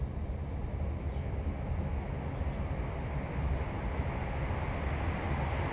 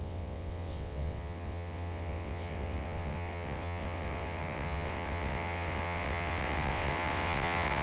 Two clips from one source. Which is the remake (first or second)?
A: second